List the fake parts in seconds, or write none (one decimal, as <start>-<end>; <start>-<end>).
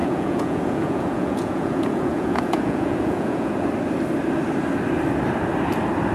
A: 0.0-3.7